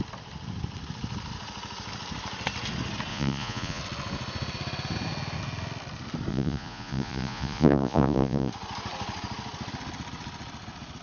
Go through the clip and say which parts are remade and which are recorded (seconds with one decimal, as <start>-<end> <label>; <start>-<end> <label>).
0.0-3.1 recorded; 3.1-3.8 remade; 3.8-6.3 recorded; 6.3-8.5 remade; 8.5-11.0 recorded